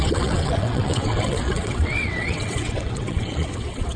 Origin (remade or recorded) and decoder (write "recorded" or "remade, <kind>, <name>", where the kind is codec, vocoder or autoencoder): remade, vocoder, WaveNeXt